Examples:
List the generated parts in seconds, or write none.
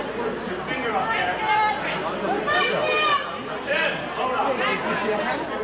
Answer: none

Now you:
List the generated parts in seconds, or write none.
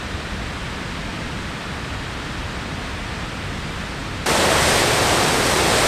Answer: 4.0-4.6 (vocoder, BigVGAN v2)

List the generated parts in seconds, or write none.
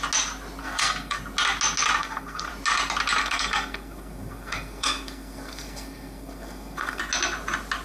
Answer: 0.6-1.2 (codec, SNAC); 2.0-2.5; 3.2-7.0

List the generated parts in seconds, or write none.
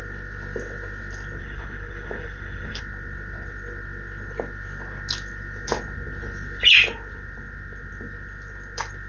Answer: 1.4-2.8 (codec, HILCodec)